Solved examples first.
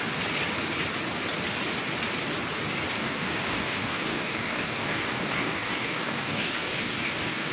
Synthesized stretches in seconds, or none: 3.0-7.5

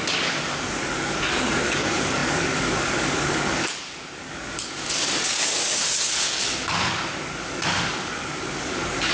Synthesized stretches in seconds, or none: 0.0-9.1